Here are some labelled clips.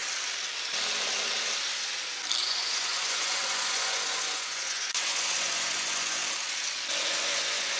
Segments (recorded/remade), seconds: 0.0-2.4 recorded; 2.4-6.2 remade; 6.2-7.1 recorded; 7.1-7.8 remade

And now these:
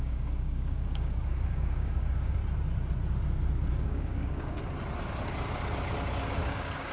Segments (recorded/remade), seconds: 0.0-2.4 remade; 2.4-3.7 recorded; 3.7-4.6 remade; 4.6-6.4 recorded; 6.4-6.9 remade